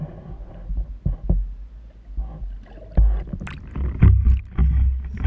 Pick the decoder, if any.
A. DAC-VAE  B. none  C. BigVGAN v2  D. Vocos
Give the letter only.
B